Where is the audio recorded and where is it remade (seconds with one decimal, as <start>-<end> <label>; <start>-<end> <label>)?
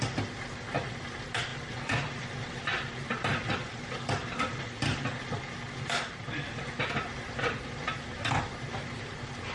0.0-1.5 recorded; 1.5-2.7 remade; 2.7-3.4 recorded; 3.4-6.1 remade; 6.1-9.5 recorded